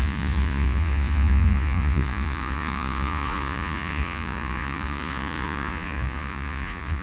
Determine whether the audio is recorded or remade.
remade